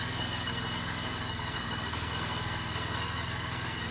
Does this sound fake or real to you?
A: fake